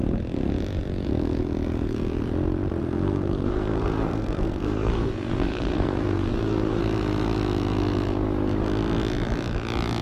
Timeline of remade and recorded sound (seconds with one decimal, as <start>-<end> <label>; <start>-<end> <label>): 0.0-2.8 recorded; 2.8-6.8 remade; 6.8-10.0 recorded